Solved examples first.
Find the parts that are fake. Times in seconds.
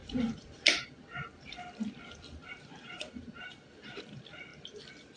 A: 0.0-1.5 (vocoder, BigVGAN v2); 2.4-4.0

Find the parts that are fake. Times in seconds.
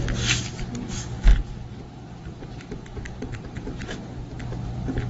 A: 1.3-4.4 (vocoder, BigVGAN v2)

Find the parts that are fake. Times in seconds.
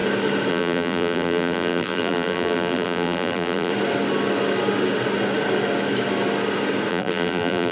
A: 0.5-3.7 (vocoder, BigVGAN v2); 6.9-7.7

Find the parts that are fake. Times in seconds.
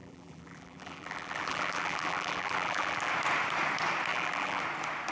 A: 0.0-3.1 (vocoder, BigVGAN v2); 4.1-4.6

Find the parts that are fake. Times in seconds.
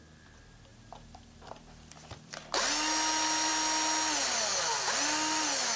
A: 0.7-2.7 (vocoder, BigVGAN v2)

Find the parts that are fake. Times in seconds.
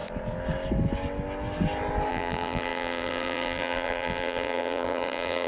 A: 2.1-5.5 (vocoder, BigVGAN v2)